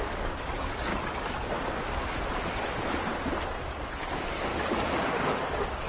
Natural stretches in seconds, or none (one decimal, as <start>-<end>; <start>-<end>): 0.9-3.9; 4.5-5.0